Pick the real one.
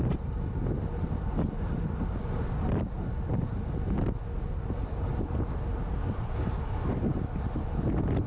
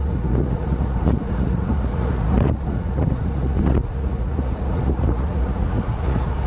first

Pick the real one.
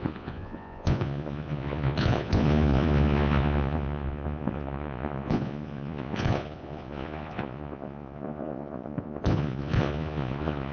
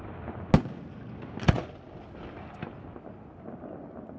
second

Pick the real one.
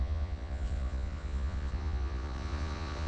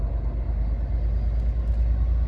second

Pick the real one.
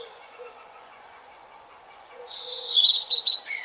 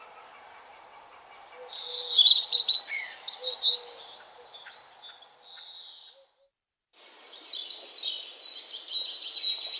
second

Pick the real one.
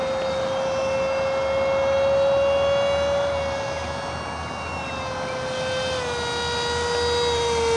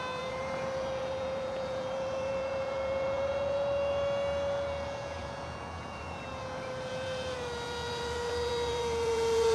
first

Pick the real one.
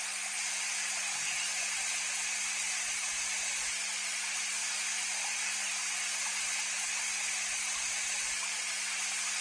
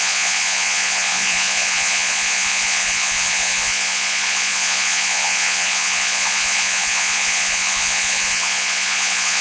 first